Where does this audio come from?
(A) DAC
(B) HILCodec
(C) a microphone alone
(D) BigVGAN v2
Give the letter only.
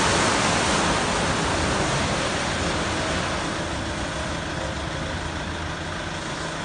C